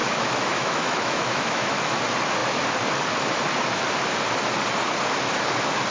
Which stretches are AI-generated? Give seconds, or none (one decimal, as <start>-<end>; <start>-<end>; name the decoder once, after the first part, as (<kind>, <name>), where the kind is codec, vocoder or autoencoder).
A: 0.0-2.0 (autoencoder, DAC-VAE)